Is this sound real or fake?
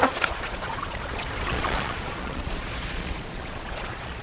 fake